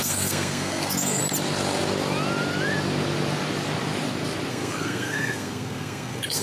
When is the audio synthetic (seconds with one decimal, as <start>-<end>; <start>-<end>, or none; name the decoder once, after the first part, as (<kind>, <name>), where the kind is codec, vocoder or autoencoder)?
0.0-1.2 (codec, SNAC); 4.5-6.4